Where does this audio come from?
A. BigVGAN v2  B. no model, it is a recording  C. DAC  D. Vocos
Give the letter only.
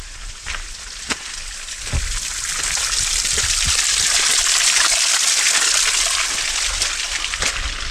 B